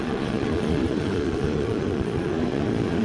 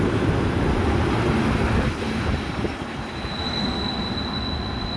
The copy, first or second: first